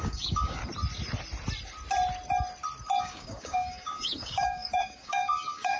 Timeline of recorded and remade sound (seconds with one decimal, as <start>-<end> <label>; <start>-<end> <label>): 0.0-0.6 remade; 0.6-3.0 recorded; 3.0-5.8 remade